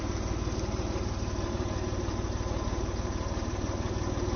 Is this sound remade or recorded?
recorded